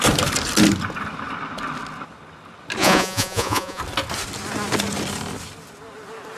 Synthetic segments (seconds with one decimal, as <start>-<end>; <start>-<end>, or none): 2.8-3.8